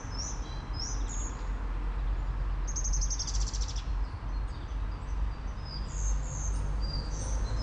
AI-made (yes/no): no